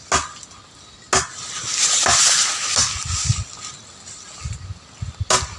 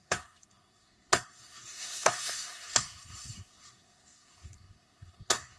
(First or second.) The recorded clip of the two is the first